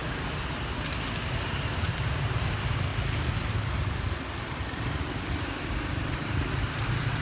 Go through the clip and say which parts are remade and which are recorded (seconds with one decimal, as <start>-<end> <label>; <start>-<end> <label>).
0.0-1.4 recorded; 1.4-2.9 remade; 2.9-3.6 recorded; 3.6-7.2 remade